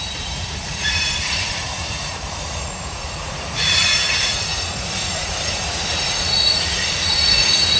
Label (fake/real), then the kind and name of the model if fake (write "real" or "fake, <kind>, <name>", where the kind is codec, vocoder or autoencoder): fake, vocoder, Vocos